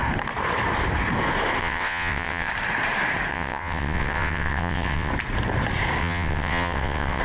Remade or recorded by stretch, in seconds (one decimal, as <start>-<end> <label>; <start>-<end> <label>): 0.0-1.6 recorded; 1.6-2.5 remade; 2.5-3.3 recorded; 3.3-5.1 remade; 5.1-6.0 recorded; 6.0-7.2 remade